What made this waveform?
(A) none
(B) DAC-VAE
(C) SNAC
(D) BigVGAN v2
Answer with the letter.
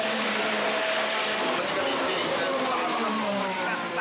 D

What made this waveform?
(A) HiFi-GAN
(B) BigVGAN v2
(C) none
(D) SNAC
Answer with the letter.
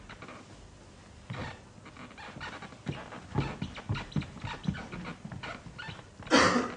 C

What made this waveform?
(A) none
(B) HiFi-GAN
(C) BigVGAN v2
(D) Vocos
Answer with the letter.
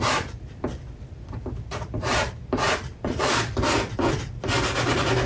C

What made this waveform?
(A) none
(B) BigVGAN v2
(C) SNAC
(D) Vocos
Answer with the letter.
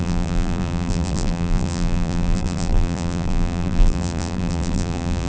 B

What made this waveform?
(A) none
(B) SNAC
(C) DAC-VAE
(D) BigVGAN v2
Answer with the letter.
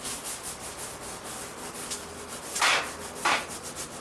A